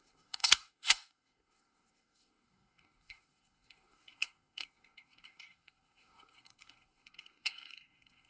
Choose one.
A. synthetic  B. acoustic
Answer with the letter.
A